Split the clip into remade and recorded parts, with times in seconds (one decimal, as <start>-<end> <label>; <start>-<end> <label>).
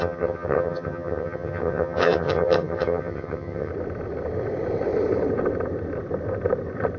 0.0-3.7 remade; 3.7-7.0 recorded